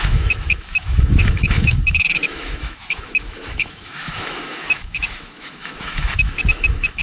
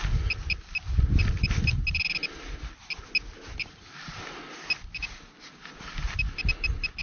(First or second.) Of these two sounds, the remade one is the first